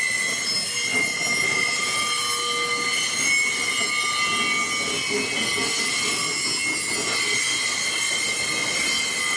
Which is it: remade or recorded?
recorded